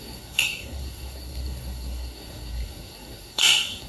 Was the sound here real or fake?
fake